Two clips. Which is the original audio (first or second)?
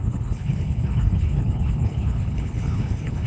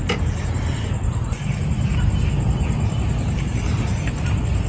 second